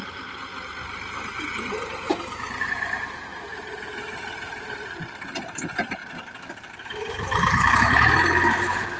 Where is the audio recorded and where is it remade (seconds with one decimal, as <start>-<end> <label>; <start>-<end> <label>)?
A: 0.0-0.5 remade; 0.5-1.4 recorded; 1.4-6.0 remade; 6.0-6.7 recorded; 6.7-9.0 remade